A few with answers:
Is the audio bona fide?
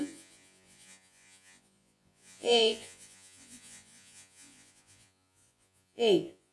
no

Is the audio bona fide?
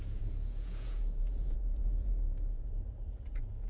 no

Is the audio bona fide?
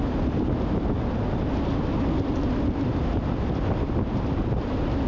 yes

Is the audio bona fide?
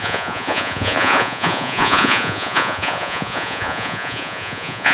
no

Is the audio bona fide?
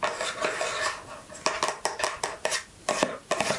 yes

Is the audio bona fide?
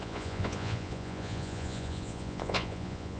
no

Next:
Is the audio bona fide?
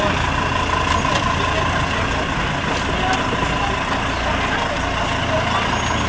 yes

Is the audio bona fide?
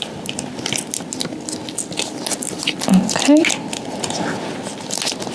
yes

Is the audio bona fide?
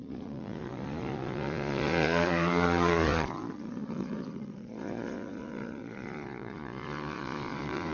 no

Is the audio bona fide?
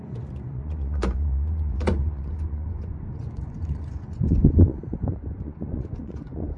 no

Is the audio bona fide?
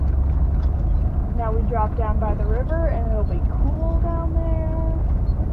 yes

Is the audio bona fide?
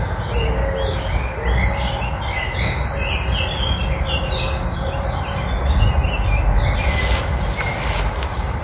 yes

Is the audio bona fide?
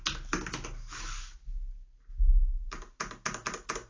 yes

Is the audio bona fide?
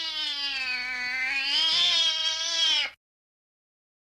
yes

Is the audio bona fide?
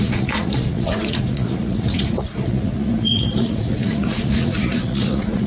no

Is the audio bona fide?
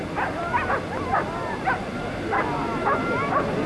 yes